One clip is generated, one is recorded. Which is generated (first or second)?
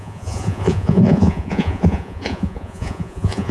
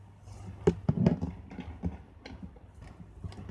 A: first